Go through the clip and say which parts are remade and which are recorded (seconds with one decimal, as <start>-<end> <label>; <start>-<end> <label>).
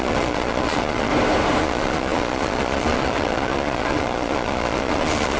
0.0-1.1 remade; 1.1-1.6 recorded; 1.6-5.4 remade